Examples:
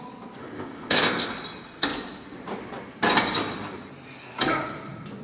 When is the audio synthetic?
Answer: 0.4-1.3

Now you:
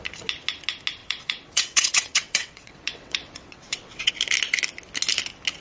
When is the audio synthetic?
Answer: 1.0-4.1

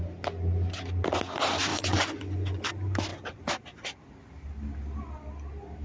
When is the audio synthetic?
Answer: 1.7-2.7

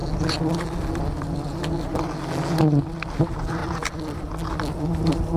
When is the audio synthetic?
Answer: none